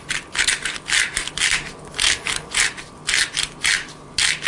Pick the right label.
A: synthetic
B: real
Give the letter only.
B